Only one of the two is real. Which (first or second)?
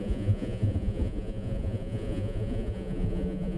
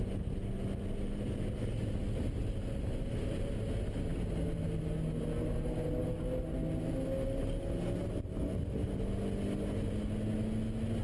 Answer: second